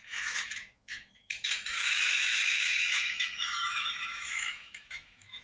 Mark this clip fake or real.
fake